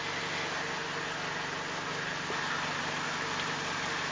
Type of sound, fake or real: real